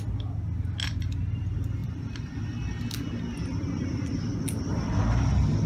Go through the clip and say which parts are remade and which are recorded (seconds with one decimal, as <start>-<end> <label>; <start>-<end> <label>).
0.0-1.8 recorded; 1.8-5.0 remade; 5.0-5.7 recorded